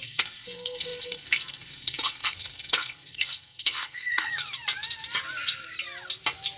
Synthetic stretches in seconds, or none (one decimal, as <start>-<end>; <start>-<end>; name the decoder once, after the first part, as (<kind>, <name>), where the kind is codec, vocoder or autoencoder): 0.0-4.3 (codec, SNAC)